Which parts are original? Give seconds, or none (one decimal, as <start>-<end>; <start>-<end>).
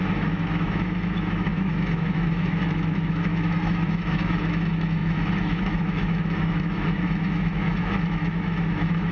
none